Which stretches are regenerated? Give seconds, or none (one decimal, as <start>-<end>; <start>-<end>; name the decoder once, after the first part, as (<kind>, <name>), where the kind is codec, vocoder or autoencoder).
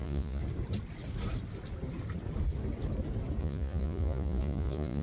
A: 0.0-0.4 (vocoder, Vocos); 3.4-5.0